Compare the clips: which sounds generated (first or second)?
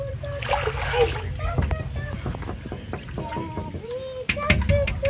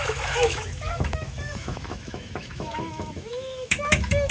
second